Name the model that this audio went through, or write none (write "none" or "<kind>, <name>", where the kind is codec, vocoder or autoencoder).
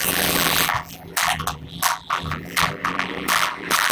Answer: vocoder, BigVGAN v2